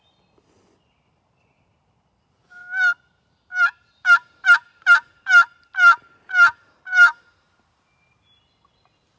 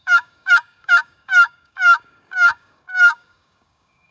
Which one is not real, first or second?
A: second